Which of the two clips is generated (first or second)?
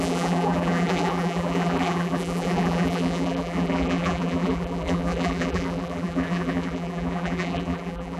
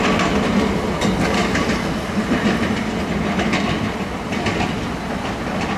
first